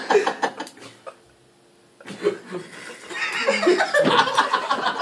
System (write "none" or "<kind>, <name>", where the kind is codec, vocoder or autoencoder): none